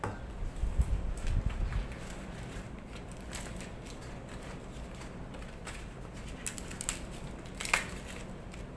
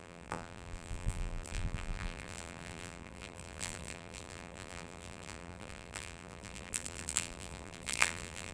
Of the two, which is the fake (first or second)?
second